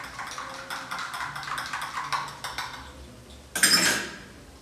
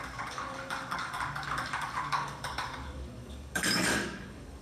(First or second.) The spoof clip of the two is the second